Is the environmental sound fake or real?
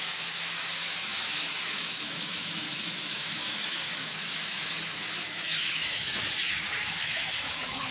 fake